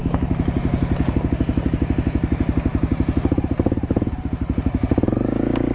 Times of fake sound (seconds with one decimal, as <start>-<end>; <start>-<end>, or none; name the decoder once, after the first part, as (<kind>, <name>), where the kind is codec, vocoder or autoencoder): none